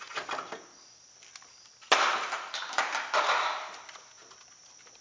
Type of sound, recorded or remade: recorded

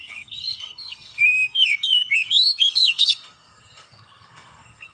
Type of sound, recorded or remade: remade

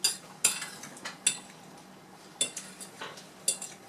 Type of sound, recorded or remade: recorded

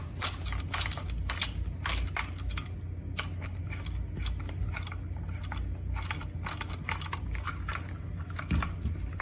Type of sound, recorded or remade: recorded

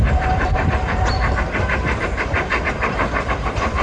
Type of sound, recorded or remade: remade